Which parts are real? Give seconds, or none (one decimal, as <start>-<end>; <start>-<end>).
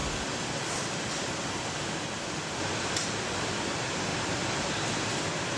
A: 0.0-4.1; 4.8-5.6